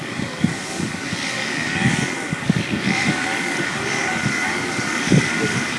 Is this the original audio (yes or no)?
no